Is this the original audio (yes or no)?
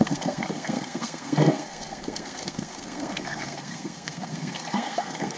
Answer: no